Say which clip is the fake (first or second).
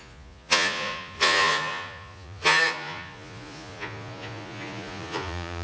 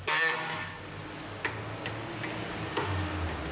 first